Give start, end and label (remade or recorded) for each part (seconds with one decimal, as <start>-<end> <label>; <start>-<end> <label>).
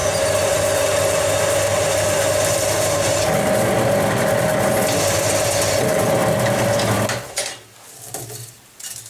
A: 0.0-9.1 recorded